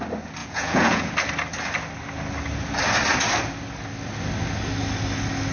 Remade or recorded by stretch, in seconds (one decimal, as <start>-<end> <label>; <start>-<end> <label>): 0.0-0.4 recorded; 0.4-1.1 remade; 1.1-5.5 recorded